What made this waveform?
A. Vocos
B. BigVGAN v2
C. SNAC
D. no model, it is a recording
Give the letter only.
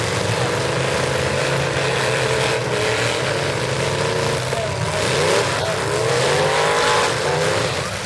D